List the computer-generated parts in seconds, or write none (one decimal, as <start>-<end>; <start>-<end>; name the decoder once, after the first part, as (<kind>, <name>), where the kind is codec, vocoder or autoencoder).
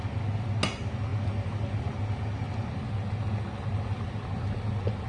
none